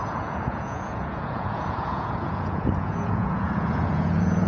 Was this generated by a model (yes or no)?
yes